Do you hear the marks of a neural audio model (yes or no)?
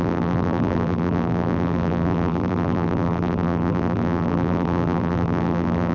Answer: yes